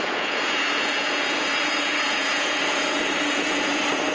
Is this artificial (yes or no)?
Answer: yes